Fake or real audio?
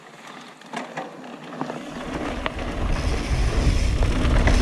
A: real